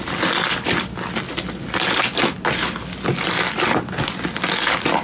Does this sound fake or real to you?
real